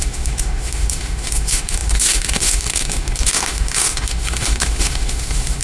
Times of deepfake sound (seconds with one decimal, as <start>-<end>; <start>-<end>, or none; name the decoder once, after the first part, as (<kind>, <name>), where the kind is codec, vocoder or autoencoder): 0.0-5.6 (autoencoder, DAC-VAE)